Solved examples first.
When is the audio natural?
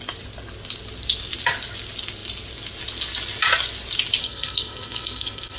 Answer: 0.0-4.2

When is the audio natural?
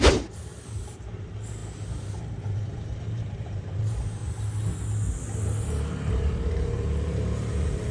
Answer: 4.2-5.6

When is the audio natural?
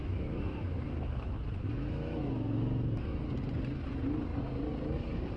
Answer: 3.2-5.4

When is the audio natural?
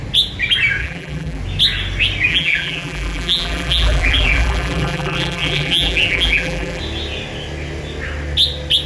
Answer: 0.0-0.8; 1.4-2.3; 6.8-8.9